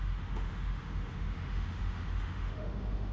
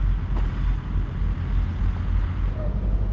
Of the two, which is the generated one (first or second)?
first